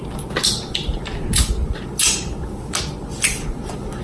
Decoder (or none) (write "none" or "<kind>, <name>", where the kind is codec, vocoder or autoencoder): none